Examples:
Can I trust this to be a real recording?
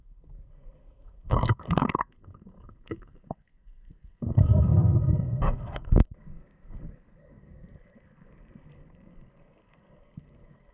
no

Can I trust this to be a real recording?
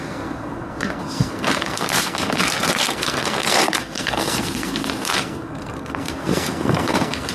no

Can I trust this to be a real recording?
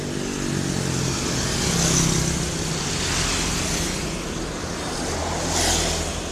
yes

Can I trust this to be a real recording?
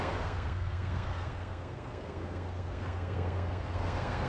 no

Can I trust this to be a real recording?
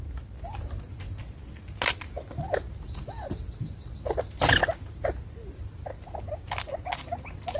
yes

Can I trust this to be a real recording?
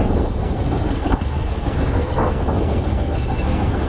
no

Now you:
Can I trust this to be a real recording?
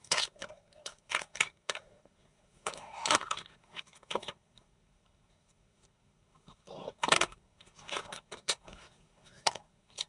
no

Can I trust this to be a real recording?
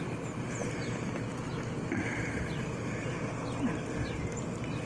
yes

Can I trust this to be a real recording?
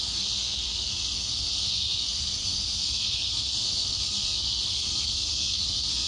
no